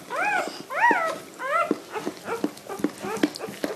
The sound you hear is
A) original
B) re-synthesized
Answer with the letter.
A